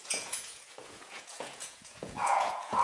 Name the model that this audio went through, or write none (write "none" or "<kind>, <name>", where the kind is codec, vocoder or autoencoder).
vocoder, Vocos